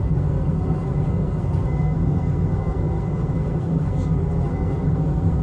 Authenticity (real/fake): fake